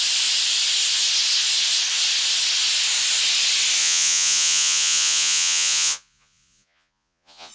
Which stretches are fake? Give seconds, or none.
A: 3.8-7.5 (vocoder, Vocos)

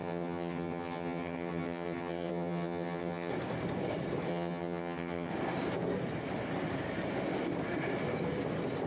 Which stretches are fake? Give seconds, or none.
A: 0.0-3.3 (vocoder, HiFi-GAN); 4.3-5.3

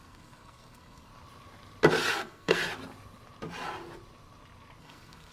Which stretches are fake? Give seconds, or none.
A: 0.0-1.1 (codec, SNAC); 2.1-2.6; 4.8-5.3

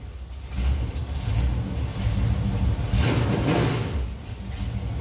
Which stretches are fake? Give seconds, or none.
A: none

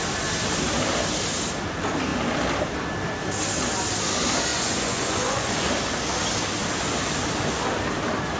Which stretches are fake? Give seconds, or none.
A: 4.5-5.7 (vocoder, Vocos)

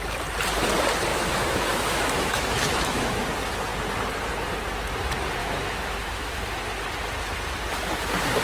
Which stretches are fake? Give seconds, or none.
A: 1.1-3.2 (autoencoder, DAC-VAE); 5.4-6.3

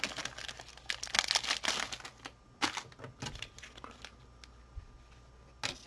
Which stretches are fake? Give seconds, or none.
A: none